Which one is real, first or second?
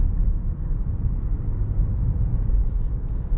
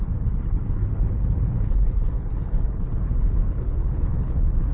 first